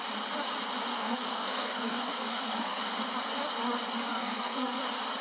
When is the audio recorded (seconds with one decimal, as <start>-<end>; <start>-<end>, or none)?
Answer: 0.0-0.9; 2.8-4.1; 4.8-5.2